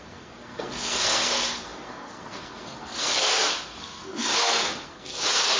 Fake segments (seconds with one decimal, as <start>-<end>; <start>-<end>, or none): 0.0-5.6

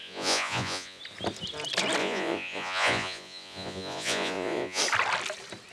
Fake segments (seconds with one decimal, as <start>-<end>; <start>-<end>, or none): 0.0-1.0; 2.0-4.8

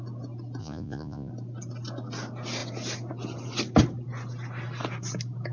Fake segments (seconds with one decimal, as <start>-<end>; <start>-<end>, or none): 0.6-1.3

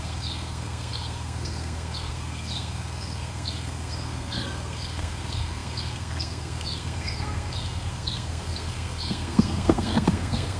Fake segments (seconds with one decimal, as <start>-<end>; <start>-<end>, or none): 0.0-10.6